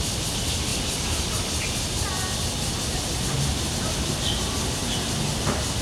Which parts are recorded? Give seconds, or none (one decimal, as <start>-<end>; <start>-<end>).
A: 0.7-4.2; 4.8-5.8